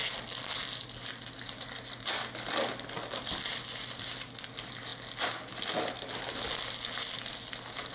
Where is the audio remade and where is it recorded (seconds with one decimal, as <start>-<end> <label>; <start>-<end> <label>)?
0.0-7.9 recorded